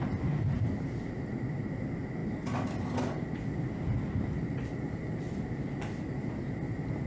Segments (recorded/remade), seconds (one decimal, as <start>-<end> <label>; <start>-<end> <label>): 0.0-7.1 recorded